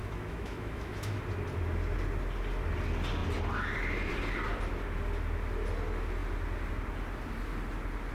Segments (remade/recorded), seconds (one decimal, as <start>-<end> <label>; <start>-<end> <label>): 0.0-1.2 remade; 1.2-8.1 recorded